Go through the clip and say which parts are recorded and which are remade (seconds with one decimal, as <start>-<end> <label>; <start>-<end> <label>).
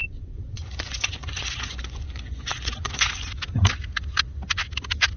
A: 0.0-3.1 remade; 3.1-5.2 recorded